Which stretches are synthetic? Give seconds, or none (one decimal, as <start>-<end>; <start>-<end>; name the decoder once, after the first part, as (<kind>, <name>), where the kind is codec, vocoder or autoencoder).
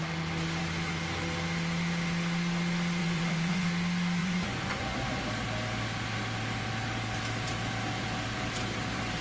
3.0-3.7 (vocoder, Vocos); 4.2-5.2